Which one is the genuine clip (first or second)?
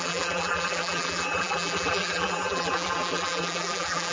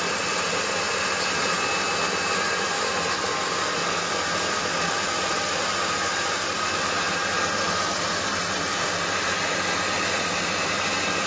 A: second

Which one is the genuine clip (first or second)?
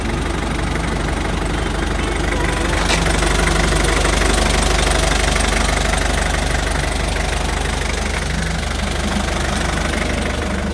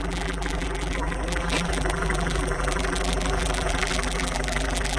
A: first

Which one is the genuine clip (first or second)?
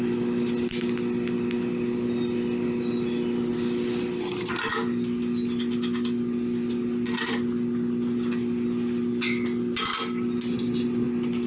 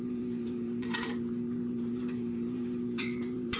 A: first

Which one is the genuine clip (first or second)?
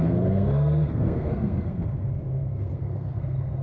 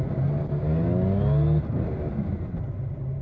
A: second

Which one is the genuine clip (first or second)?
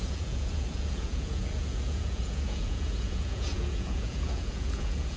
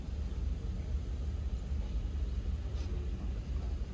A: second